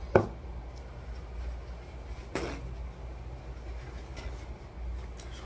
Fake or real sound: real